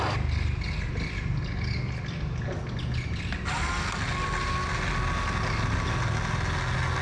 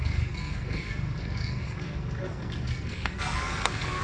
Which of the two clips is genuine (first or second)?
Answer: first